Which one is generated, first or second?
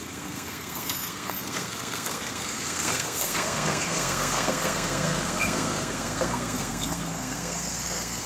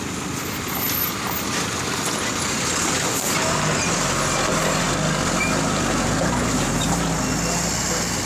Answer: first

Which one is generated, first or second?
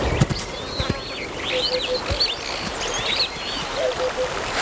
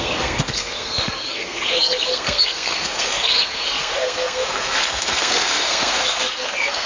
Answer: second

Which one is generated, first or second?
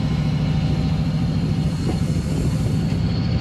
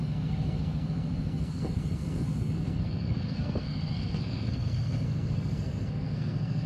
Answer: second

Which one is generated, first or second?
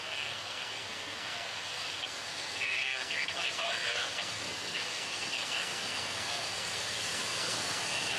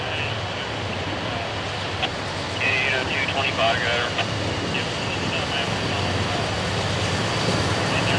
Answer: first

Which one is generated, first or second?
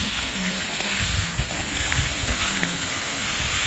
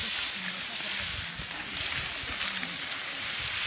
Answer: first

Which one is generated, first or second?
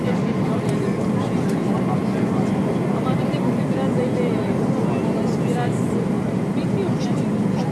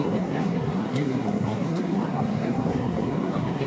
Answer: second